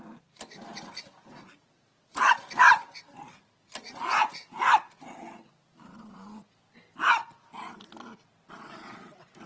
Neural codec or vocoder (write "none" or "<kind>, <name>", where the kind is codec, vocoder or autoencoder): none